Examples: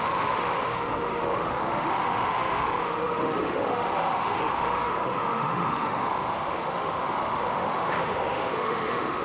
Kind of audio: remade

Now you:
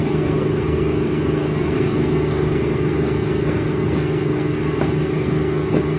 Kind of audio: remade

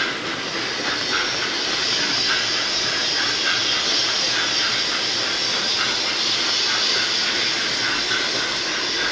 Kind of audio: recorded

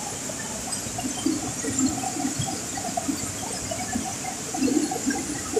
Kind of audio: recorded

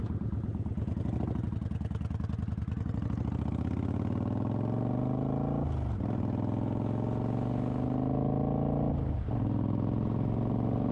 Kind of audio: recorded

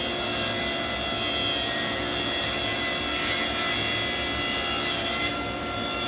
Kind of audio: recorded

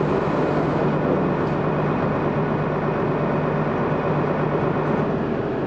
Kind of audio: recorded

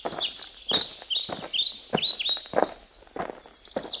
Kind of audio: recorded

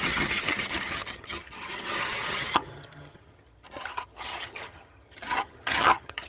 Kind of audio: remade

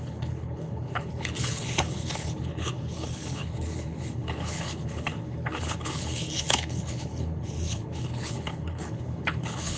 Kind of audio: remade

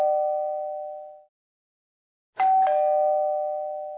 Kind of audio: recorded